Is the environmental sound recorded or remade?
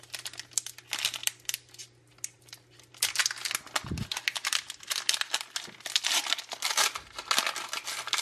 recorded